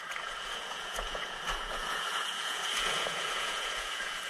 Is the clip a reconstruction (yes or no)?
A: yes